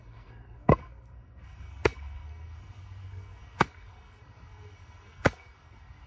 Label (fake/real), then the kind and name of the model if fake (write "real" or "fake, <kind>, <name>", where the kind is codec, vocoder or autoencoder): fake, codec, SNAC